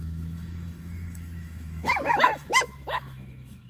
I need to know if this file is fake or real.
fake